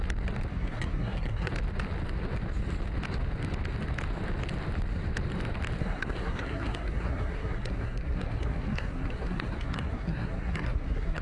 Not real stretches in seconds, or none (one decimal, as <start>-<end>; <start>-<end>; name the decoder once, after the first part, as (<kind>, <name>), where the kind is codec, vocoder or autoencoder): 0.5-1.5 (codec, SNAC); 5.8-11.2